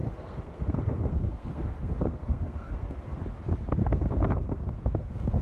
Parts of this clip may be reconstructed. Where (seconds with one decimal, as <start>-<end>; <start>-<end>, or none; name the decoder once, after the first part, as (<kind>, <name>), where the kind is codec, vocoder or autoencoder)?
0.0-3.2 (codec, SNAC); 3.8-5.4